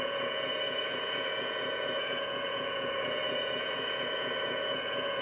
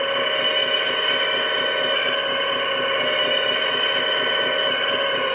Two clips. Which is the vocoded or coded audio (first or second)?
first